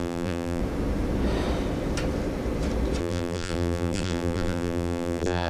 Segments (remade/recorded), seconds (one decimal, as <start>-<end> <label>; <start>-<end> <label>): 0.0-0.6 remade; 0.6-3.0 recorded; 3.0-5.5 remade